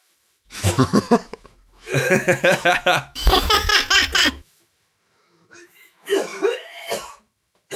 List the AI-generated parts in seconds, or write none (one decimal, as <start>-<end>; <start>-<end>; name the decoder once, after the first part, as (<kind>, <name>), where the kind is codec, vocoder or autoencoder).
0.0-3.7 (autoencoder, DAC-VAE); 4.3-7.8